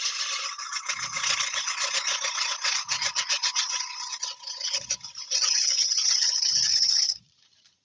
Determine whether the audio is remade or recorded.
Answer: remade